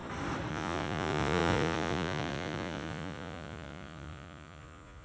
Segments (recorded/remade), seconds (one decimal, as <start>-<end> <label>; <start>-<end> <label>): 0.0-0.5 recorded; 0.5-5.0 remade